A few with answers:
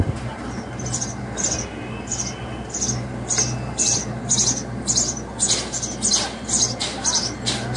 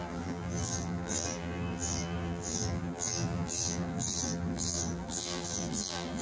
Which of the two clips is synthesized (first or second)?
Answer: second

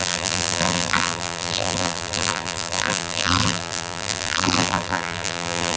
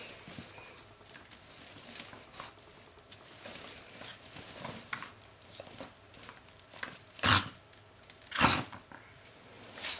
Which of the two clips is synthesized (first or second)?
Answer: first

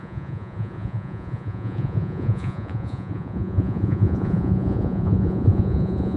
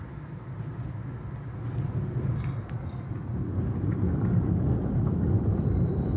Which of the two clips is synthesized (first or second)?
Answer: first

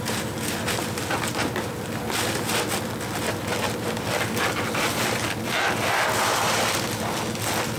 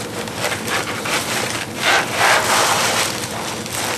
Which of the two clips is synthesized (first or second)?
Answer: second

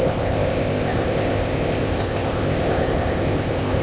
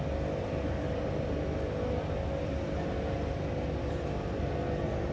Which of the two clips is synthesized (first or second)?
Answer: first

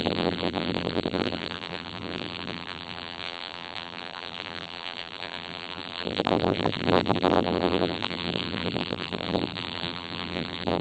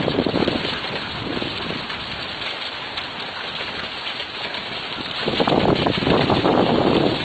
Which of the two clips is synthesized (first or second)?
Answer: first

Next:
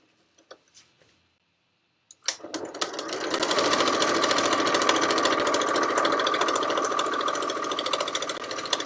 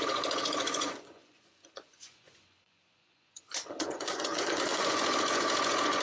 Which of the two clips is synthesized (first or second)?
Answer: second